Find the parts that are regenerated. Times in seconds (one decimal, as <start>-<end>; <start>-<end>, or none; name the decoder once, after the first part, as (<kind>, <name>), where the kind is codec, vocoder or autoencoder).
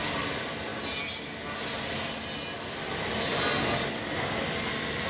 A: none